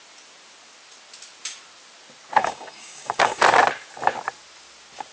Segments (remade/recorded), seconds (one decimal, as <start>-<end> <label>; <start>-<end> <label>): 0.0-2.4 recorded; 2.4-3.4 remade; 3.4-5.1 recorded